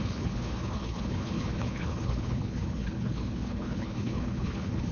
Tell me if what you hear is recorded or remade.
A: remade